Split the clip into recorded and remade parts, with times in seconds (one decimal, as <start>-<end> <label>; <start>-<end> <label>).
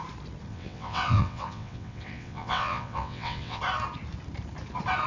0.0-0.5 recorded; 0.5-3.6 remade; 3.6-5.1 recorded